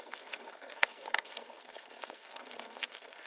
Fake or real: fake